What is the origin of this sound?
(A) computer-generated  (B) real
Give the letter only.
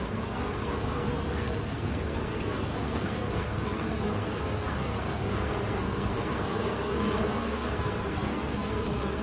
A